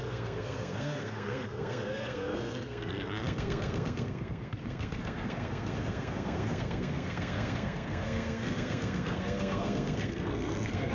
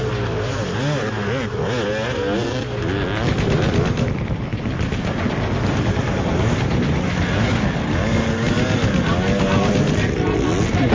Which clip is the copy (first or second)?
first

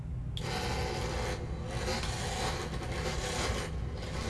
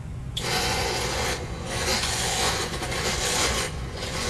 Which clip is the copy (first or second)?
second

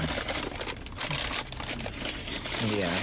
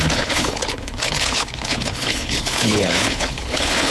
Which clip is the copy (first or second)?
second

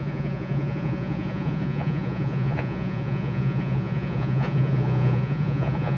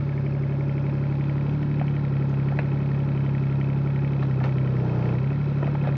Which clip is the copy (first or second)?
first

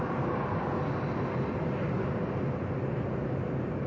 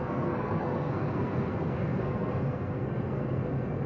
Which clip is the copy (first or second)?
second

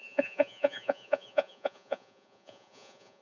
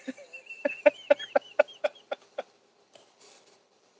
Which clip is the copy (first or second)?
first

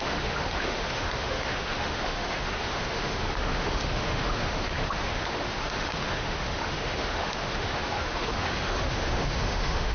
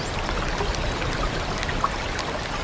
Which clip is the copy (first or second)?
first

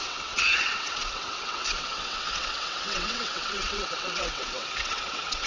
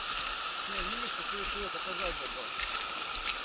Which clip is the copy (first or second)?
first